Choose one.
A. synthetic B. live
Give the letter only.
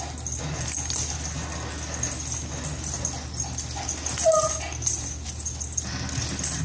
B